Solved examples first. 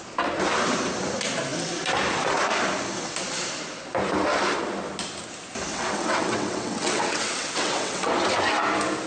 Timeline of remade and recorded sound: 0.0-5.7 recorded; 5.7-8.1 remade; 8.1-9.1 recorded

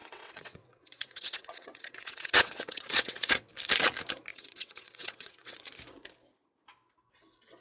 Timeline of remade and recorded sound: 0.0-3.5 remade; 3.5-4.3 recorded; 4.3-5.6 remade; 5.6-7.6 recorded